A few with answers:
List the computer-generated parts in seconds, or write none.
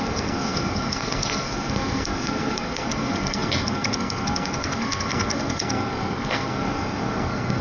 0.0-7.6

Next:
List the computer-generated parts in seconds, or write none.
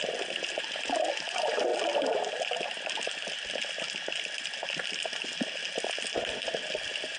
none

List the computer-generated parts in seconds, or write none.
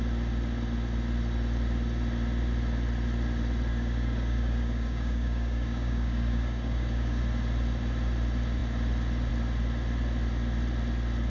3.7-7.2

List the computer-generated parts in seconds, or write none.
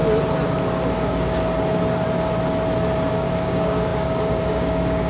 3.1-5.1